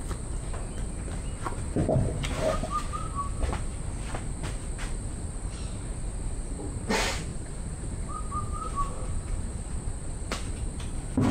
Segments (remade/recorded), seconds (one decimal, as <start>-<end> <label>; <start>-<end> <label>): 0.0-7.3 recorded; 7.3-10.5 remade; 10.5-11.3 recorded